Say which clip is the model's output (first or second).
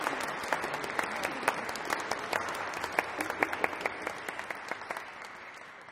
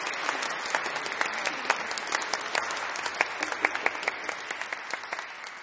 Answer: first